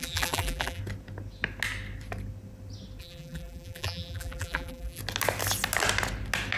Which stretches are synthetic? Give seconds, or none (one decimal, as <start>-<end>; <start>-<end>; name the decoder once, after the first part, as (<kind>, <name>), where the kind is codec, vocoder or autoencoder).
0.0-0.8 (vocoder, BigVGAN v2); 3.0-5.0